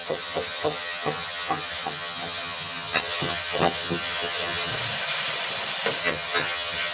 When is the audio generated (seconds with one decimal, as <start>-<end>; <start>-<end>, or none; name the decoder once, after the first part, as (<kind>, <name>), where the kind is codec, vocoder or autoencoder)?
0.0-4.7 (vocoder, HiFi-GAN); 6.0-6.9